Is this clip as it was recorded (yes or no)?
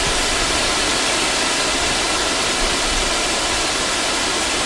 yes